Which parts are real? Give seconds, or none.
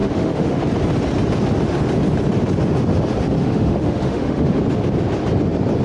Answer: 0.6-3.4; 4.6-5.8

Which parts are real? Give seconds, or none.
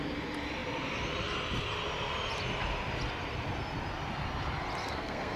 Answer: 0.0-4.8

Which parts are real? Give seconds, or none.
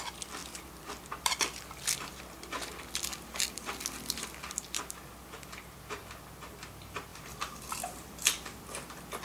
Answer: 0.0-0.4; 2.2-3.1; 5.6-7.1; 8.1-9.2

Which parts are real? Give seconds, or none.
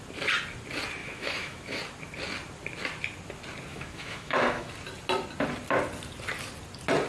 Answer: 0.0-1.0; 1.8-3.7; 4.7-7.1